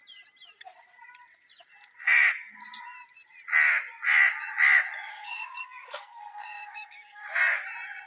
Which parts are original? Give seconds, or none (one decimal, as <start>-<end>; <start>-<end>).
0.0-5.1; 7.2-8.1

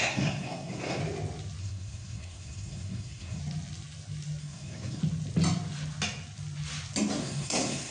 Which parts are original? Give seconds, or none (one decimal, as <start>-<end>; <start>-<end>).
1.0-1.6; 3.4-4.4; 5.0-7.2

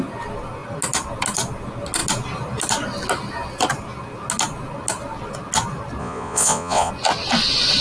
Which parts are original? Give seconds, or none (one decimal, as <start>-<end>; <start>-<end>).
0.0-6.0; 6.9-7.8

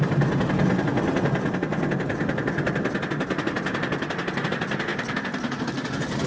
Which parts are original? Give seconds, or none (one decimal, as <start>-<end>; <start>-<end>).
0.0-6.3

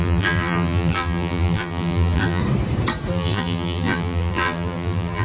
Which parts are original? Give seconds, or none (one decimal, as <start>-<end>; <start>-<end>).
2.4-3.1

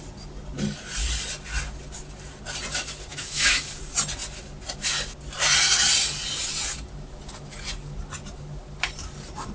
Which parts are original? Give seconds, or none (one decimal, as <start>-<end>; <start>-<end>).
0.0-3.1; 3.8-9.5